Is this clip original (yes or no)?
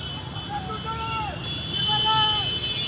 yes